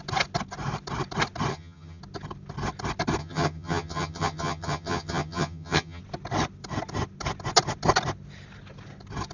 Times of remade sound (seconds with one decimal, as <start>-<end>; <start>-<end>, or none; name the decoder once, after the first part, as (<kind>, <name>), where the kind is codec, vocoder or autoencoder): 1.5-2.0 (vocoder, HiFi-GAN); 3.2-6.0